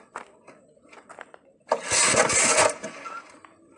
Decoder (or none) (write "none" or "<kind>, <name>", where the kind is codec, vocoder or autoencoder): none